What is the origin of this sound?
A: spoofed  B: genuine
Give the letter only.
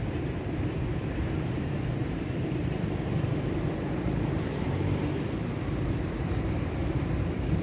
A